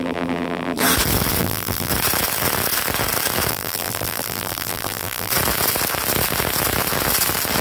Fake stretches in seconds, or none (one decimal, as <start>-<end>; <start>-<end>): 0.0-0.8; 1.4-1.9; 3.5-5.3